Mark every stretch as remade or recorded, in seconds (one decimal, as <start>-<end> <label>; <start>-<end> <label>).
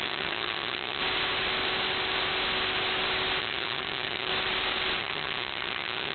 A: 0.0-1.0 remade; 1.0-3.4 recorded; 3.4-4.3 remade; 4.3-5.0 recorded; 5.0-6.1 remade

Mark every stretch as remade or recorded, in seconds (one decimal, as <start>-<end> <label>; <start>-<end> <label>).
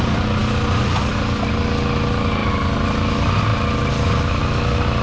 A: 0.0-5.0 recorded